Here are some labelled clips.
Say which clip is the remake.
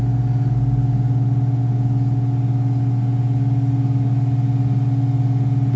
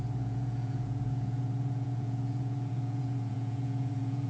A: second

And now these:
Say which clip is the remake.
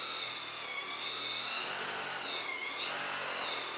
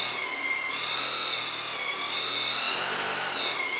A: second